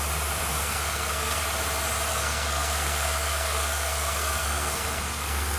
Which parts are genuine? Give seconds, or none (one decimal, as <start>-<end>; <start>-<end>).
0.0-0.5; 1.4-2.1